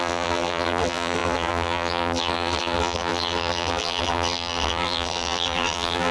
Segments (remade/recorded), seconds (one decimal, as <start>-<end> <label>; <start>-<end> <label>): 0.0-6.1 remade